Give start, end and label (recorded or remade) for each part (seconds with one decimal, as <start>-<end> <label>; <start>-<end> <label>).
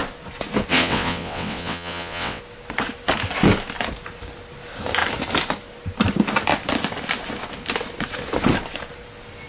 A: 0.0-0.7 recorded; 0.7-2.4 remade; 2.4-9.5 recorded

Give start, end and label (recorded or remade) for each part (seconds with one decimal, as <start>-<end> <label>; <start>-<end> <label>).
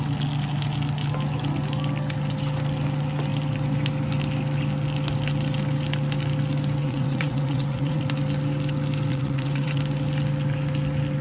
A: 0.0-6.8 recorded; 6.8-8.0 remade; 8.0-9.1 recorded; 9.1-9.8 remade; 9.8-11.2 recorded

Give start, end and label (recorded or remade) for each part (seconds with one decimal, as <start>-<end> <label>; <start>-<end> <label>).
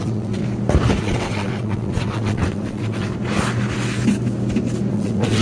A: 0.0-0.4 remade; 0.4-1.0 recorded; 1.0-3.1 remade; 3.1-4.9 recorded; 4.9-5.4 remade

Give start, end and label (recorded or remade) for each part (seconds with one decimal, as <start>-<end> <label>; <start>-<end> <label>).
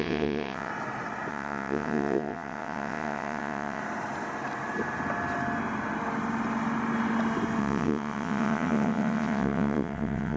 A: 0.0-0.7 remade; 0.7-1.3 recorded; 1.3-3.8 remade; 3.8-7.6 recorded; 7.6-10.4 remade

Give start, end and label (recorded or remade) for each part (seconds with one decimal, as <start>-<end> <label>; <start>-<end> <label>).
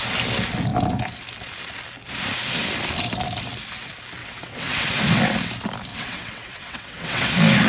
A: 0.0-4.2 recorded; 4.2-5.0 remade; 5.0-5.9 recorded; 5.9-7.3 remade; 7.3-7.7 recorded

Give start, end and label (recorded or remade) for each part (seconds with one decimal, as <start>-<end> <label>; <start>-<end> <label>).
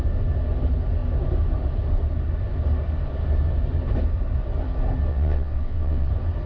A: 0.0-5.1 recorded; 5.1-6.1 remade; 6.1-6.5 recorded